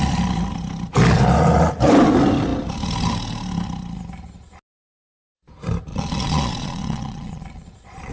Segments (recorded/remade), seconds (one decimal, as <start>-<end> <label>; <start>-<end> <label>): 0.0-5.9 recorded; 5.9-8.1 remade